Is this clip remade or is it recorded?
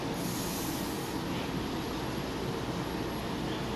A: recorded